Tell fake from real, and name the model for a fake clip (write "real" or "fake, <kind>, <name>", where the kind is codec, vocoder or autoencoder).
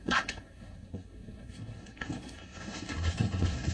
fake, codec, SNAC